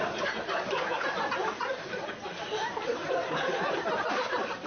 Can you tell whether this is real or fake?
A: real